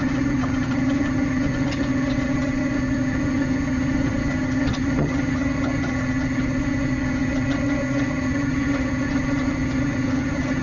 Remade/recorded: remade